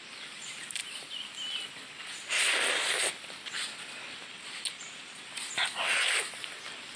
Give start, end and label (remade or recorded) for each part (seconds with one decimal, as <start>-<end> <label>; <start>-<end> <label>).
0.0-7.0 recorded